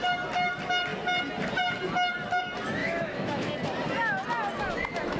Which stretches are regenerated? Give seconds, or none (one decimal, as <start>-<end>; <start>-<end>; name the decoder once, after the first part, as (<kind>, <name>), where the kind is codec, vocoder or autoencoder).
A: 2.8-3.5 (autoencoder, DAC-VAE)